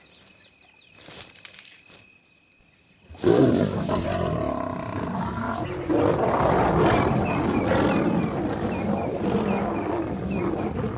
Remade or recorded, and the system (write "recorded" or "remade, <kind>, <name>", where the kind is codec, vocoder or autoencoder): recorded